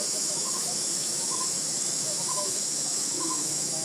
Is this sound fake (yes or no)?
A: yes